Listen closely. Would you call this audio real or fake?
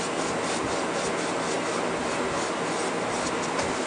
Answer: real